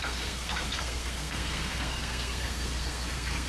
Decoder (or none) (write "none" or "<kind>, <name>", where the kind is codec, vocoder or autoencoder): codec, SNAC